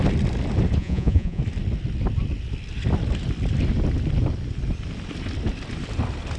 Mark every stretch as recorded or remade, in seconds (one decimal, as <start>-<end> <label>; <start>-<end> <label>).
0.0-0.8 recorded; 0.8-1.4 remade; 1.4-6.4 recorded